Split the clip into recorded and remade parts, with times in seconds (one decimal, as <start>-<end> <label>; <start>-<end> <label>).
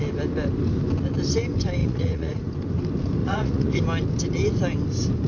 0.0-1.8 recorded; 1.8-2.4 remade; 2.4-3.2 recorded; 3.2-3.8 remade; 3.8-5.3 recorded